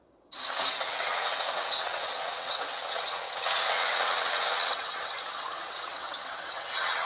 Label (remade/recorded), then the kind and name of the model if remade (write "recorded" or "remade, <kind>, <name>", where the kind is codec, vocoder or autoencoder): remade, vocoder, WaveNeXt